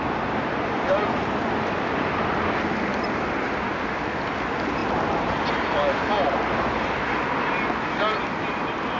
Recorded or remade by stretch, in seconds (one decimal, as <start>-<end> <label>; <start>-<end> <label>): 0.0-9.0 recorded